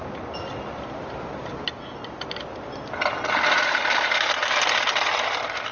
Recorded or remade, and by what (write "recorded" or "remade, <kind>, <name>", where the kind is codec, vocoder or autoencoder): recorded